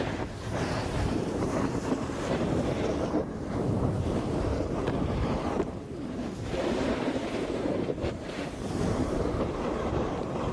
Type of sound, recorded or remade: remade